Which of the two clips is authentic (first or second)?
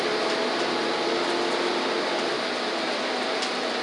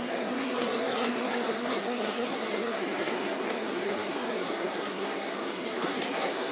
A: first